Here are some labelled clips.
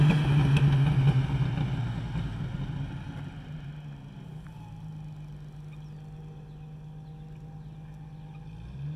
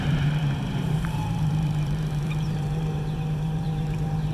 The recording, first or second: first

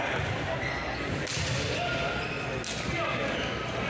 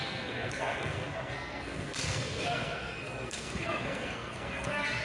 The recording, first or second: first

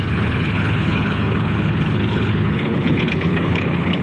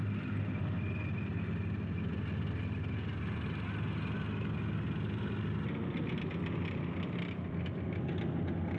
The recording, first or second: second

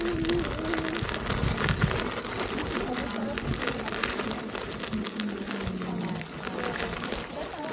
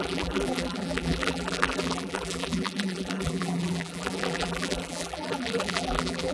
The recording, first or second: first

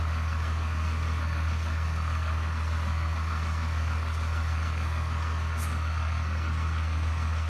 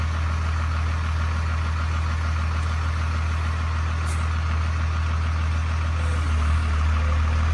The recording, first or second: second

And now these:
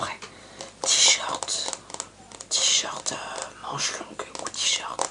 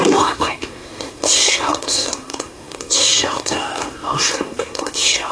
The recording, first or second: first